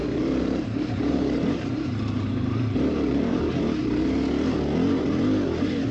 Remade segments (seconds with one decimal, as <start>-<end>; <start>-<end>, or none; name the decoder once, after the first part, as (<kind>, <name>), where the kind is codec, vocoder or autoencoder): 0.0-3.5 (vocoder, BigVGAN v2)